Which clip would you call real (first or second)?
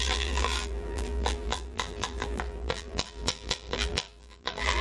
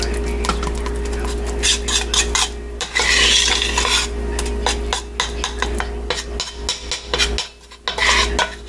second